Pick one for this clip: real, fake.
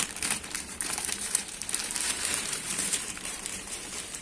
fake